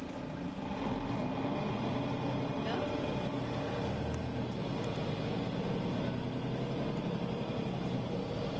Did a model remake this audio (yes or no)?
no